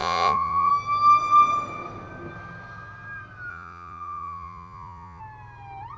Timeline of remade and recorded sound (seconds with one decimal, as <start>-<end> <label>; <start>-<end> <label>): 0.0-0.7 remade; 0.7-3.5 recorded; 3.5-5.2 remade; 5.2-6.0 recorded